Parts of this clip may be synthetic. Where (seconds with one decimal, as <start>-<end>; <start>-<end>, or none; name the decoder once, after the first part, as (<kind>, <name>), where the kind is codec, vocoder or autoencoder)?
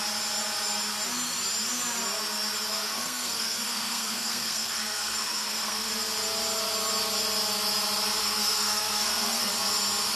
2.7-5.9 (codec, SNAC); 8.2-9.5